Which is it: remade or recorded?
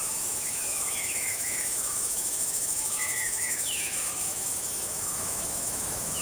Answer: remade